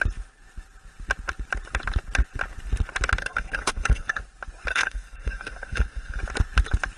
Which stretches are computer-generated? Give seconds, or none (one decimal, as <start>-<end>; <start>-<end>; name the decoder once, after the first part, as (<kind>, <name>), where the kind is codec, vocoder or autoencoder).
3.2-4.2 (codec, SNAC); 4.7-6.2